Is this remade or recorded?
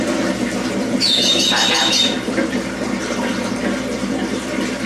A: recorded